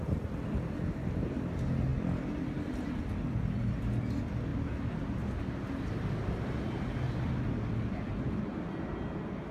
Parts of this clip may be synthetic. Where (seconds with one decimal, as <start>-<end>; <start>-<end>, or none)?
none